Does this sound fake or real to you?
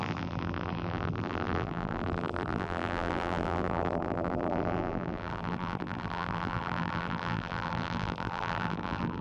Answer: fake